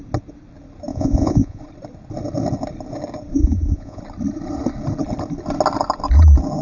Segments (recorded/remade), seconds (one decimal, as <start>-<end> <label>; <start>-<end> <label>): 0.0-0.9 recorded; 0.9-1.6 remade; 1.6-3.4 recorded; 3.4-4.0 remade; 4.0-6.6 recorded